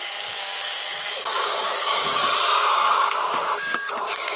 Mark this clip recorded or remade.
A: remade